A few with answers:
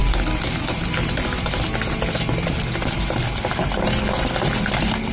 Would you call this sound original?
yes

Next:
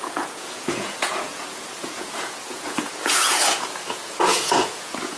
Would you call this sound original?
no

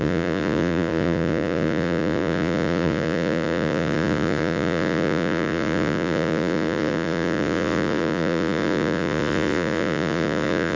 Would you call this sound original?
no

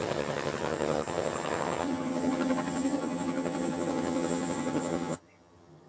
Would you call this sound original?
no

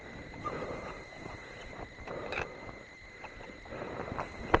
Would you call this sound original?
yes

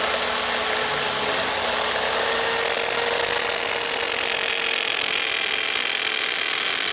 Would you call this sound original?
yes